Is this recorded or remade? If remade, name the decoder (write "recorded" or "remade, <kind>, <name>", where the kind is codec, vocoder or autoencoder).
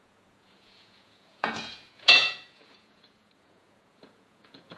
remade, vocoder, Vocos